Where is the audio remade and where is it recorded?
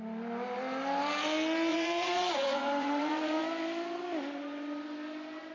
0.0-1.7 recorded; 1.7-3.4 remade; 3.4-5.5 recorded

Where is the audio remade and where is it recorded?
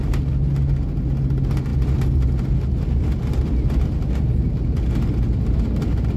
0.0-6.2 recorded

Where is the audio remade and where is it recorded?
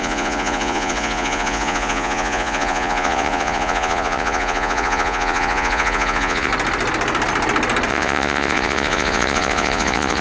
0.0-6.5 remade; 6.5-7.9 recorded; 7.9-10.2 remade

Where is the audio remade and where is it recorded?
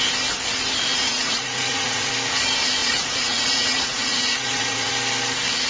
0.0-0.9 recorded; 0.9-2.1 remade; 2.1-2.8 recorded; 2.8-4.9 remade; 4.9-5.7 recorded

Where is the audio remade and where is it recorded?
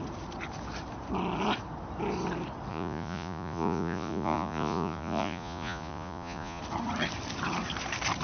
0.0-2.7 recorded; 2.7-6.6 remade; 6.6-8.2 recorded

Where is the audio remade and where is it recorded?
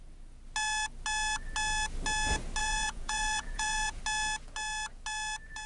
0.0-2.6 recorded; 2.6-4.0 remade; 4.0-5.7 recorded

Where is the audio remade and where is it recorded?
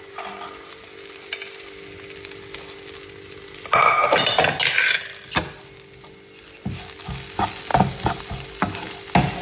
0.0-9.4 recorded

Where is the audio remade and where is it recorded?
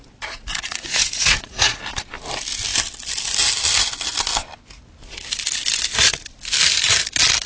0.0-0.5 recorded; 0.5-1.8 remade; 1.8-7.5 recorded